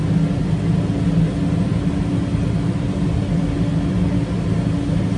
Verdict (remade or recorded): recorded